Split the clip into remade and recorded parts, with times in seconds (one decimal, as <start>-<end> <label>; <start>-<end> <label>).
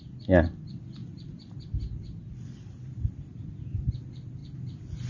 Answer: 0.0-5.1 recorded